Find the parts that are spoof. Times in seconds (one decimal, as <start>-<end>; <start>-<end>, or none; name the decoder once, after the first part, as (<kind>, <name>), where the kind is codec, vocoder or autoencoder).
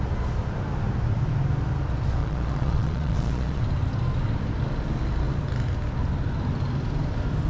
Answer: 2.2-3.6 (vocoder, Vocos)